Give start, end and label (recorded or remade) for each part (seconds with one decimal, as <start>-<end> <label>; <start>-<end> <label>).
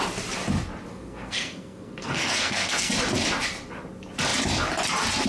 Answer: 0.0-0.9 recorded; 0.9-2.9 remade; 2.9-5.3 recorded